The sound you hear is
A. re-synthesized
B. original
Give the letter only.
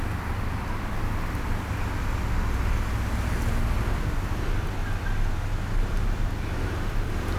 B